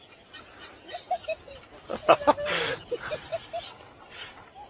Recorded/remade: recorded